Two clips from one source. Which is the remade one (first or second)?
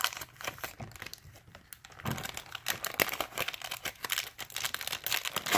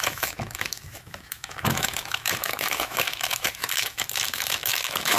second